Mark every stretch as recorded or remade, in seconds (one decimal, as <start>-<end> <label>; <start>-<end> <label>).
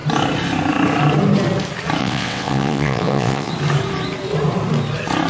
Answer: 0.0-2.0 recorded; 2.0-3.5 remade; 3.5-5.3 recorded